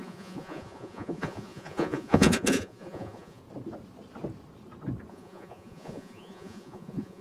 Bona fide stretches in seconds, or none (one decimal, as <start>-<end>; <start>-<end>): 3.4-5.1